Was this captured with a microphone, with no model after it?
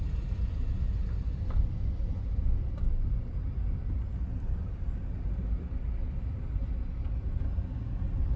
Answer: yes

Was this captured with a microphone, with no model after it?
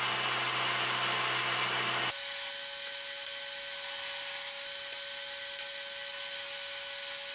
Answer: yes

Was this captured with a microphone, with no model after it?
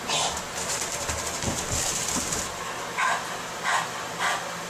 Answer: yes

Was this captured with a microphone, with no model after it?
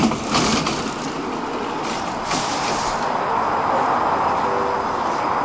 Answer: yes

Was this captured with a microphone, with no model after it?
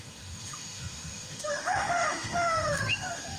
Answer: no